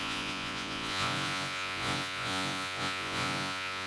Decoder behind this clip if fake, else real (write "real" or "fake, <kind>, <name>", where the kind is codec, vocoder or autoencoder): fake, vocoder, Vocos